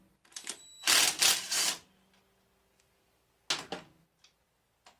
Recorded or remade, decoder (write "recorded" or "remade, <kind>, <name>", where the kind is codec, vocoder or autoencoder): recorded